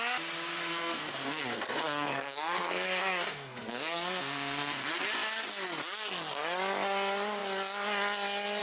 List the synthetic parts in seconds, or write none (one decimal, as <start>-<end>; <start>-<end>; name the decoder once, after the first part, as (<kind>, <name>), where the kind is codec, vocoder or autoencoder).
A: 0.7-5.0 (codec, SNAC)